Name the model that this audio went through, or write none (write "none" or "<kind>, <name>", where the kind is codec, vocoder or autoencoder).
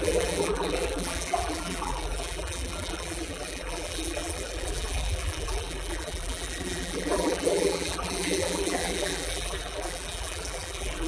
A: vocoder, BigVGAN v2